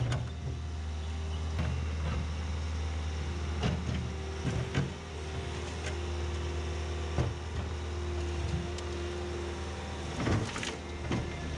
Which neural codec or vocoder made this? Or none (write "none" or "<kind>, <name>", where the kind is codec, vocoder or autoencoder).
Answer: none